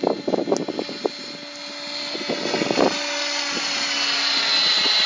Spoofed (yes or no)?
no